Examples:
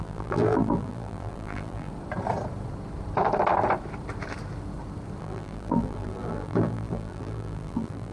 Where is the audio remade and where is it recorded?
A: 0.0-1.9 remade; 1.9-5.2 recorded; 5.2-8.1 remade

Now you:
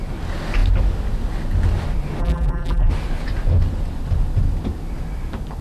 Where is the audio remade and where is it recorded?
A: 0.0-2.2 recorded; 2.2-2.9 remade; 2.9-5.6 recorded